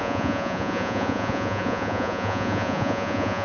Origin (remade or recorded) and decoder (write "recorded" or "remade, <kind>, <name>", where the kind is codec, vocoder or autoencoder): remade, vocoder, Vocos